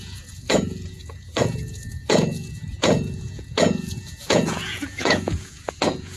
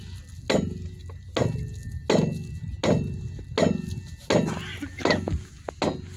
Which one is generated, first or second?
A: first